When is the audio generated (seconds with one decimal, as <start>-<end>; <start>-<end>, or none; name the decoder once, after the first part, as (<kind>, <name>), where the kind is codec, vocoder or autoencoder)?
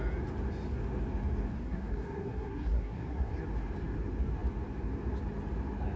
1.5-3.3 (codec, SNAC)